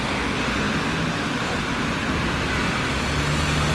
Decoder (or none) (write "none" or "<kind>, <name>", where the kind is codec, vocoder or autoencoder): none